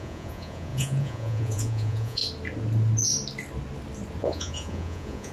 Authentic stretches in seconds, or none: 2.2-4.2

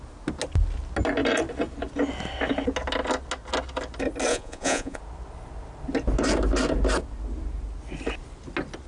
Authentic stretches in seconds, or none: 0.0-4.3; 5.0-8.9

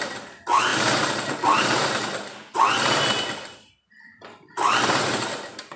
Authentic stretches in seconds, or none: 0.0-5.8

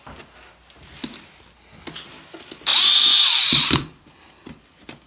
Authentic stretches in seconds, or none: 0.0-5.1

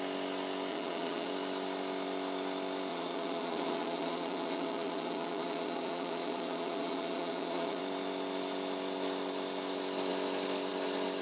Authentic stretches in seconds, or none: 0.0-0.7; 1.3-2.9; 7.8-11.2

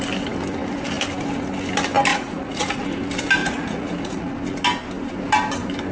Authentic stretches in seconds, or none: 0.0-2.1; 2.8-3.4; 4.3-5.9